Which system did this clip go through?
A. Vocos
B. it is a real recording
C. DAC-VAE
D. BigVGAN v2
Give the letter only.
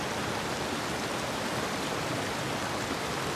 B